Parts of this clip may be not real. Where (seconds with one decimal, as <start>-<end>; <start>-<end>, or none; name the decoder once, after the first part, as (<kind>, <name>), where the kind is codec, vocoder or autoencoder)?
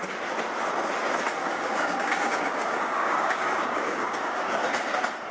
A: 1.4-4.6 (codec, DAC)